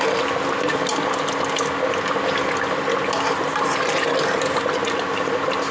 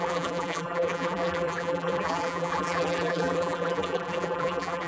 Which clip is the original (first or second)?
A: first